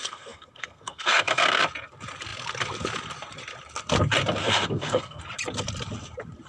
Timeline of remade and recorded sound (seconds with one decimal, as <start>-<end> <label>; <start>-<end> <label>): 0.0-1.6 remade; 1.6-4.4 recorded; 4.4-5.2 remade; 5.2-6.5 recorded